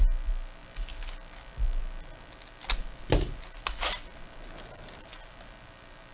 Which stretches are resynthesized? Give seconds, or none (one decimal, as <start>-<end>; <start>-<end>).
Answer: none